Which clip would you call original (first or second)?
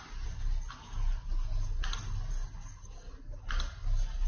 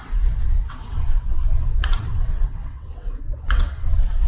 first